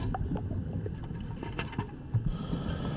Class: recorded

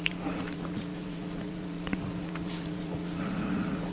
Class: remade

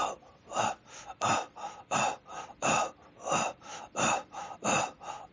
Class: recorded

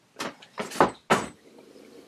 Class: recorded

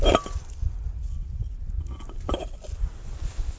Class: recorded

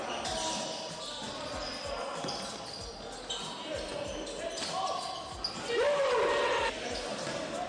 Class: recorded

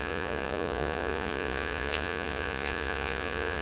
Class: remade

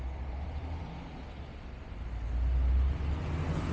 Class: recorded